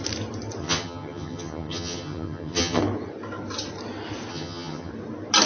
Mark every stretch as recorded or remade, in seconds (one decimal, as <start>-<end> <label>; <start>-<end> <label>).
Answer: 0.0-0.6 recorded; 0.6-2.8 remade; 2.8-4.3 recorded; 4.3-4.9 remade; 4.9-5.5 recorded